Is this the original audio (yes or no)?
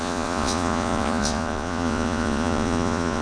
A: no